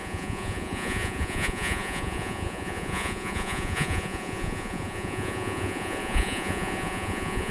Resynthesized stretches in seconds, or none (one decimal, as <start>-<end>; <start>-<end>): 0.0-7.5